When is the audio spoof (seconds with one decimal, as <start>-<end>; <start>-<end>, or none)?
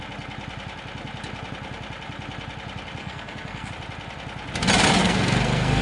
3.0-3.7; 5.0-5.8